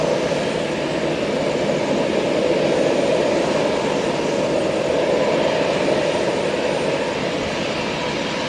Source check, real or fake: real